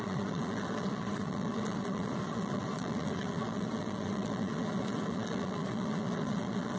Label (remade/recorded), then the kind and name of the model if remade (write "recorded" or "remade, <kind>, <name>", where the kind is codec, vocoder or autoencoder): remade, vocoder, Vocos